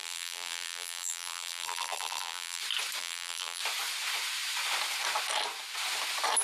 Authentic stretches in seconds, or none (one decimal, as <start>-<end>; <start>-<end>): 2.6-3.0; 3.6-6.4